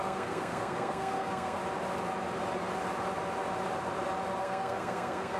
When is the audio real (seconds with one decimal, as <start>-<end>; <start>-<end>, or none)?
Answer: 1.6-4.4